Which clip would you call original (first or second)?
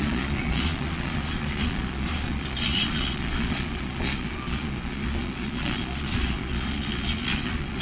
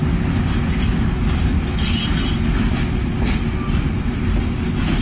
second